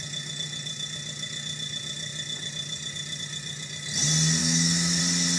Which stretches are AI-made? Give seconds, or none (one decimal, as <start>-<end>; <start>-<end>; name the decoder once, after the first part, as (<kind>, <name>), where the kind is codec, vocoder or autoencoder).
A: 4.4-5.0 (autoencoder, DAC-VAE)